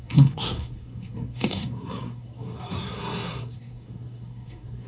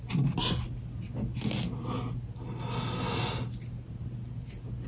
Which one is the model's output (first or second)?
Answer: first